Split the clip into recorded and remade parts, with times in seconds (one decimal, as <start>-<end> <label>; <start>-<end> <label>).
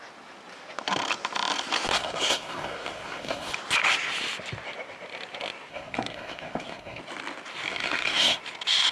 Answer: 0.0-1.9 recorded; 1.9-3.5 remade; 3.5-5.7 recorded; 5.7-7.0 remade; 7.0-7.7 recorded; 7.7-8.4 remade; 8.4-8.9 recorded